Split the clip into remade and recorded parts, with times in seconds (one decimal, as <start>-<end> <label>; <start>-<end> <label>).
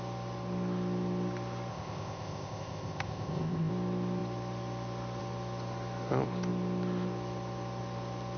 0.0-1.7 recorded; 1.7-3.7 remade; 3.7-8.4 recorded